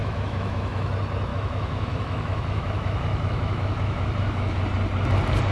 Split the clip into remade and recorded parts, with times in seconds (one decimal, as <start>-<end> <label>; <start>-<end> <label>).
0.0-0.9 remade; 0.9-1.3 recorded; 1.3-4.6 remade; 4.6-5.5 recorded